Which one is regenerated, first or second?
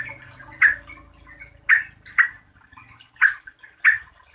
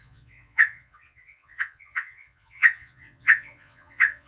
second